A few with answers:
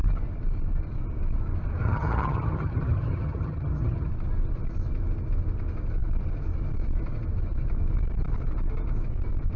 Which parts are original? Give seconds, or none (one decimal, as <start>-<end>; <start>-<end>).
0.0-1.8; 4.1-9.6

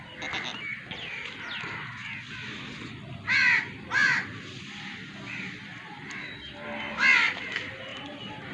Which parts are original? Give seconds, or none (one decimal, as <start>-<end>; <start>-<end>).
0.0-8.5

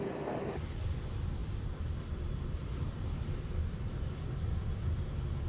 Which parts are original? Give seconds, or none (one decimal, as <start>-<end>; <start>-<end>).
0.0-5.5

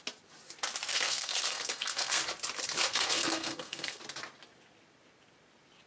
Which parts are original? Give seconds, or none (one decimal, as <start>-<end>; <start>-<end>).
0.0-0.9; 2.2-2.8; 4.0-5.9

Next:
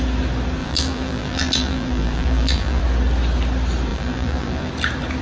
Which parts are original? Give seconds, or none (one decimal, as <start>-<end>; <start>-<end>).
0.0-0.6; 2.8-3.9; 4.7-5.2

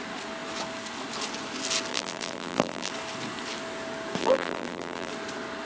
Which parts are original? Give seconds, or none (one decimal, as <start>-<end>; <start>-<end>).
0.0-1.9; 2.9-4.2; 5.1-5.6

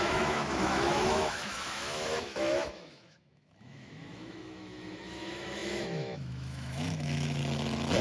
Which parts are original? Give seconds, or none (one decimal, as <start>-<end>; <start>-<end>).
7.4-8.0